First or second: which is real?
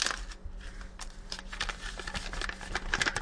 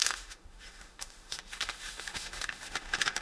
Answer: first